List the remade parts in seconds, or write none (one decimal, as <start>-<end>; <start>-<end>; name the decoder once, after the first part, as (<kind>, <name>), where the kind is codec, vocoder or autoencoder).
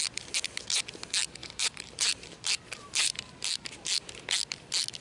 1.4-4.2 (vocoder, BigVGAN v2)